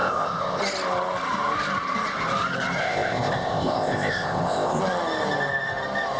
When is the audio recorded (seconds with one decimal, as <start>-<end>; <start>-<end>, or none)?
0.6-2.8; 4.8-6.2